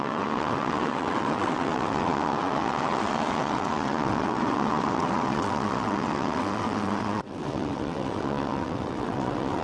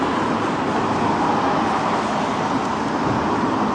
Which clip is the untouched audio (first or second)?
second